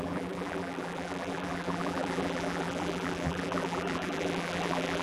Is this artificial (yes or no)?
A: yes